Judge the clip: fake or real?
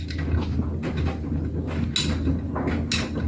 real